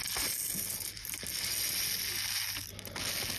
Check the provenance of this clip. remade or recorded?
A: recorded